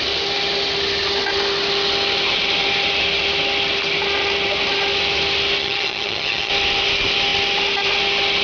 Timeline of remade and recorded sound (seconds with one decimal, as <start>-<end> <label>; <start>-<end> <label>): 0.0-5.6 recorded; 5.6-6.5 remade; 6.5-8.4 recorded